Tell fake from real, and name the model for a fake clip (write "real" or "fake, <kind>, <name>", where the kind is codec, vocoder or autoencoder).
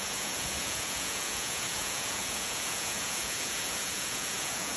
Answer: fake, vocoder, Vocos